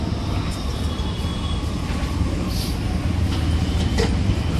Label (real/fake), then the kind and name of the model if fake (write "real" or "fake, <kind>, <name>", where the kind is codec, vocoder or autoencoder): real